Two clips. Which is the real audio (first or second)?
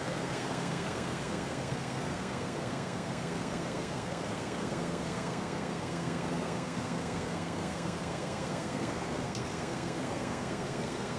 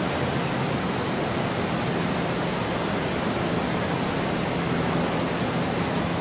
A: second